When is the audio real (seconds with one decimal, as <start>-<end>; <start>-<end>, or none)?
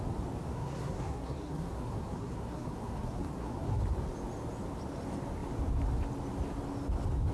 0.0-0.5; 3.8-7.3